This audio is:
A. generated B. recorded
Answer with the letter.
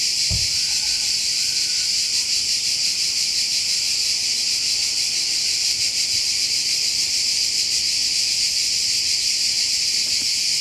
B